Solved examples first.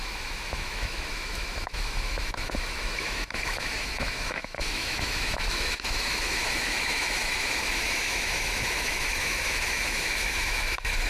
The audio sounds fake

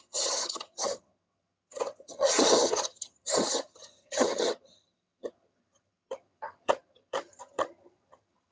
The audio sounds fake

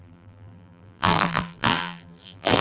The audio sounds fake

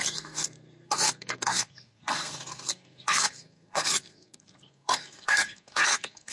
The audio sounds fake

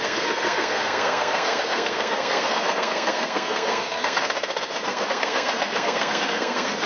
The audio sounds fake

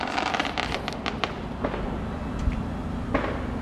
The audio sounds real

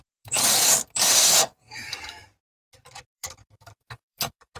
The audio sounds fake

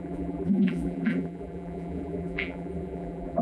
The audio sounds fake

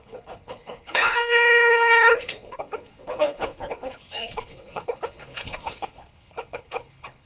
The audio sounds fake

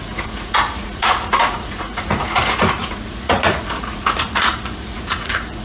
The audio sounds fake